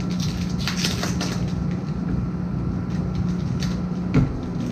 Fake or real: real